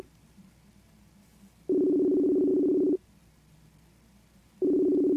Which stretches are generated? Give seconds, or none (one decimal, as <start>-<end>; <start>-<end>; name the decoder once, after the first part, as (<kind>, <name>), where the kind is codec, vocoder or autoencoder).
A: none